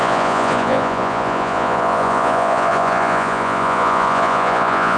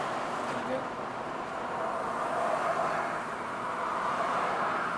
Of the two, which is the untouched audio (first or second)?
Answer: second